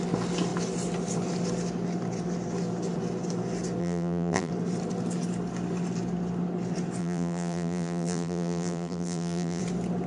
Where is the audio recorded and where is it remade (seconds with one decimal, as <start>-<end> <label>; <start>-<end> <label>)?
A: 0.0-3.8 recorded; 3.8-4.5 remade; 4.5-7.0 recorded; 7.0-9.6 remade; 9.6-10.1 recorded